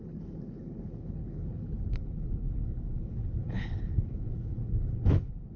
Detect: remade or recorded remade